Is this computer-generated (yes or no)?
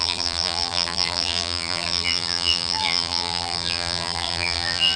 yes